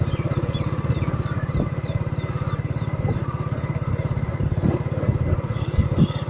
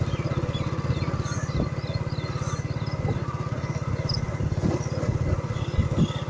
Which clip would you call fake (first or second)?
first